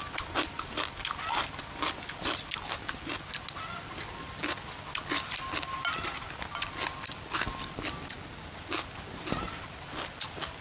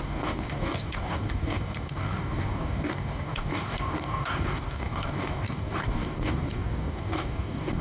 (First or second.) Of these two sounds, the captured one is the first